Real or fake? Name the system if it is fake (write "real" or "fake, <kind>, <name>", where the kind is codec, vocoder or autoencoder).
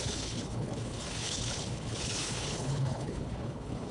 fake, codec, HILCodec